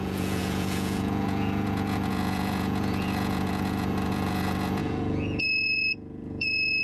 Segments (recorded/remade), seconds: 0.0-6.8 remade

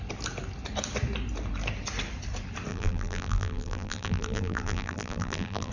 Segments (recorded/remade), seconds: 0.0-2.7 recorded; 2.7-5.7 remade

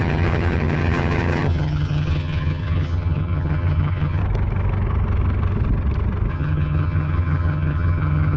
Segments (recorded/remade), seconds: 0.0-4.2 remade; 4.2-6.3 recorded; 6.3-8.4 remade

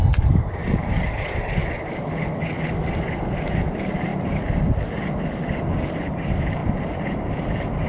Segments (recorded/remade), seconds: 0.0-0.6 remade; 0.6-1.1 recorded; 1.1-1.6 remade; 1.6-3.5 recorded; 3.5-4.1 remade; 4.1-6.1 recorded; 6.1-6.6 remade; 6.6-7.9 recorded

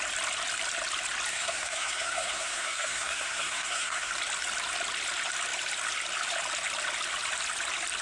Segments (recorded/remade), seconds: 0.0-1.3 recorded; 1.3-4.1 remade; 4.1-8.0 recorded

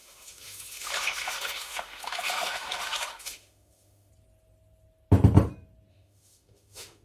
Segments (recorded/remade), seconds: 0.0-4.1 remade; 4.1-5.9 recorded; 5.9-7.0 remade

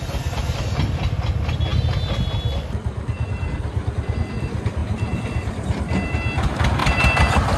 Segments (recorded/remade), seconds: 0.0-7.6 recorded

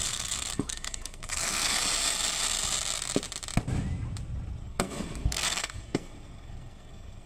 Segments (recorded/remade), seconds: 0.0-1.8 remade; 1.8-4.6 recorded; 4.6-7.3 remade